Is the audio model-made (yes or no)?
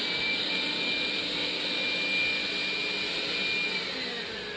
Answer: no